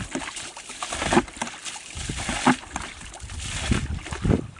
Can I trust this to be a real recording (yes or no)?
yes